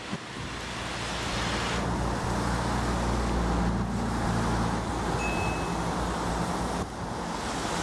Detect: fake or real real